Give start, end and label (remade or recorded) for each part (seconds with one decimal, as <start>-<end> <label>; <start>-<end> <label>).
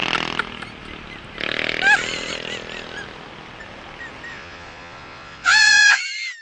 0.0-4.3 recorded; 4.3-6.0 remade; 6.0-6.4 recorded